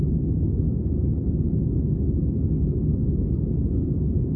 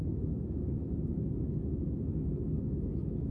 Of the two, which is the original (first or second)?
first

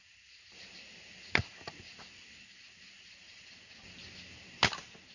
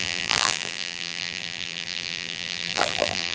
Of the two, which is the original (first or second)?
first